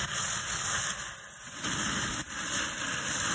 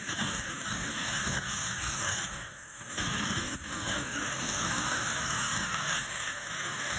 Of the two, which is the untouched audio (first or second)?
first